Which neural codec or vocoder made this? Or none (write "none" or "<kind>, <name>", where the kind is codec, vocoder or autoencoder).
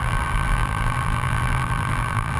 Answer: vocoder, BigVGAN v2